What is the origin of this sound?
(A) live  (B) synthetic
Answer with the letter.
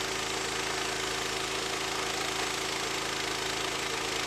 A